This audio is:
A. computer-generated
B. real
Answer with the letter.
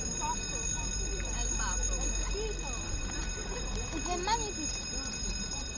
B